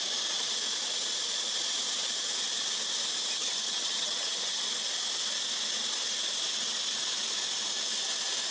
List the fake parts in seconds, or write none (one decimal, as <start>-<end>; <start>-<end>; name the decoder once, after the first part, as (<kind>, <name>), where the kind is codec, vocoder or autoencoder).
3.4-4.6 (vocoder, HiFi-GAN)